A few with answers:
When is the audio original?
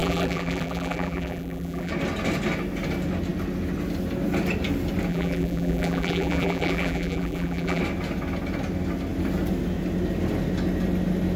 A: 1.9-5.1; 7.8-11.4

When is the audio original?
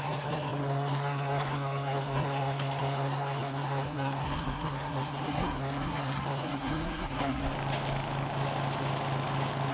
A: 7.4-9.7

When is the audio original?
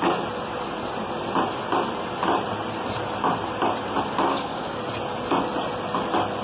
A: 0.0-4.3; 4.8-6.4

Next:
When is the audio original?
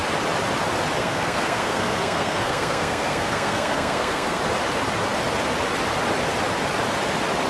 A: 0.0-1.0; 4.4-7.5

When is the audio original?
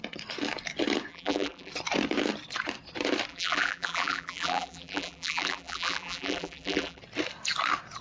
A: 0.0-1.1; 1.7-3.3; 7.0-8.0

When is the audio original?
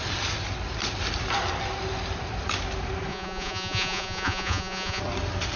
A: 0.0-3.1; 5.0-5.6